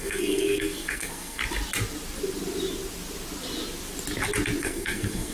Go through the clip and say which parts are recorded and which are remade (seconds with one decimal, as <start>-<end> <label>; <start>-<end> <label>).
0.0-1.4 remade; 1.4-4.6 recorded; 4.6-5.3 remade